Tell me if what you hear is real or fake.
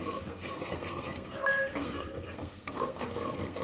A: fake